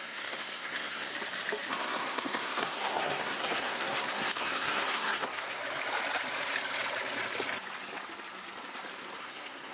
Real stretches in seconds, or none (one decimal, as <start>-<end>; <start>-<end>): 1.1-1.7; 5.6-9.2